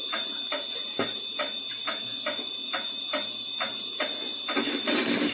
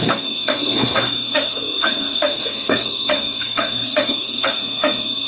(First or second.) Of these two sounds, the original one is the first